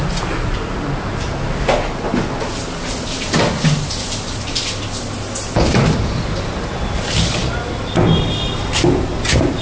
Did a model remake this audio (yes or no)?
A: no